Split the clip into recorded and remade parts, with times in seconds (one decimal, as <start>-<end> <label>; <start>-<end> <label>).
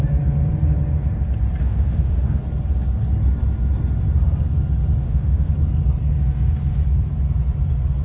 0.0-1.6 recorded; 1.6-2.4 remade; 2.4-5.0 recorded; 5.0-5.5 remade; 5.5-8.0 recorded